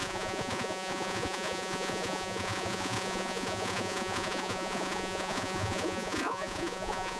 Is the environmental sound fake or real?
fake